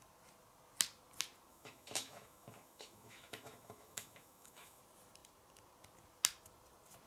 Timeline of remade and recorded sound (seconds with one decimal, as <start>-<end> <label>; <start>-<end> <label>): 0.0-1.5 recorded; 1.5-4.8 remade; 4.8-7.1 recorded